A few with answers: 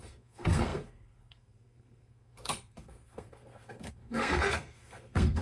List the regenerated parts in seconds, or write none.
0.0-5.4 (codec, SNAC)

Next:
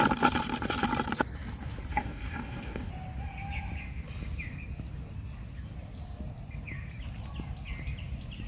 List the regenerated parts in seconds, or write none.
1.9-2.9 (codec, DAC)

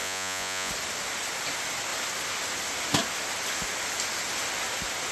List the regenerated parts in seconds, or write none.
0.0-0.7 (vocoder, Vocos)

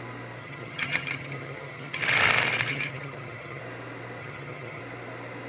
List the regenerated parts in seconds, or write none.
0.4-2.0 (vocoder, HiFi-GAN); 2.7-3.6; 4.2-4.8

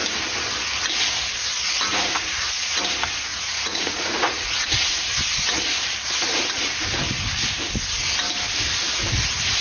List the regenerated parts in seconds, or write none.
1.9-2.8 (vocoder, Vocos); 3.3-5.1